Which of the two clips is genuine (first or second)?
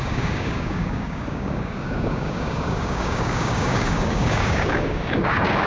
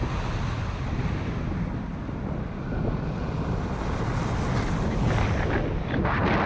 second